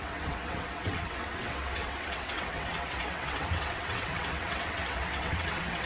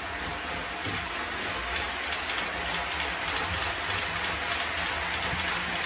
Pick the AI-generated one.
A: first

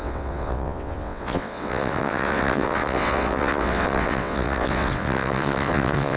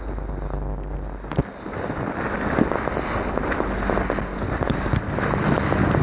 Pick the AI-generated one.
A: first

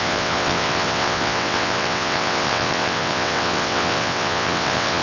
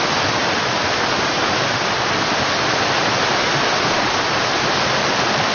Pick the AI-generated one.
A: first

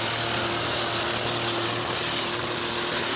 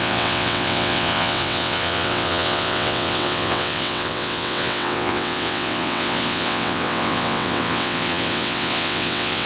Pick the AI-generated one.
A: second